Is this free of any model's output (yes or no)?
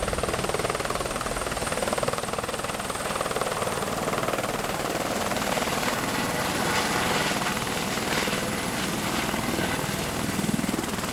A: yes